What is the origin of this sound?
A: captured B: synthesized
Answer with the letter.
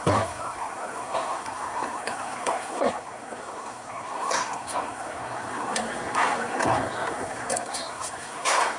B